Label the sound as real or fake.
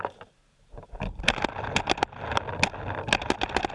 real